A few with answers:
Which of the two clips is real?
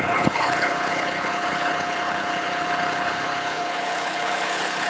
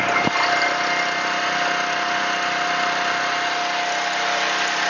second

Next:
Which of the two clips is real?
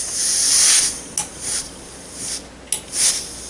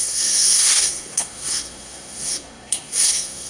first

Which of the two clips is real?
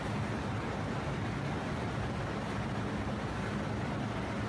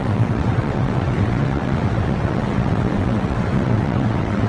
first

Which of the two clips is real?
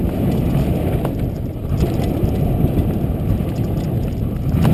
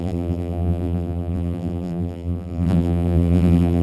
first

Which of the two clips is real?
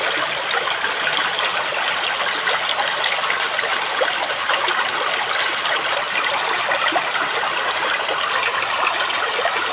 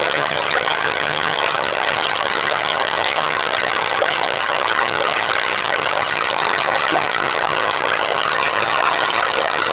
first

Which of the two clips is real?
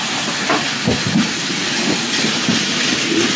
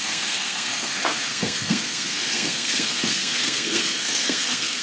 first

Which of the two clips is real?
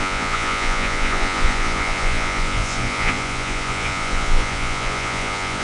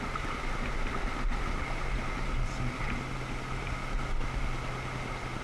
second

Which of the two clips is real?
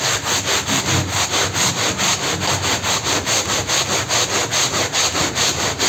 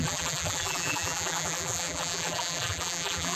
first